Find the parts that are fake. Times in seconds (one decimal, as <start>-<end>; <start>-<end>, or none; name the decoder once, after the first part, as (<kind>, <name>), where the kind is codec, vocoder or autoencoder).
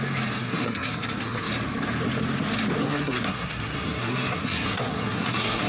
0.4-1.5 (codec, SNAC); 2.8-5.7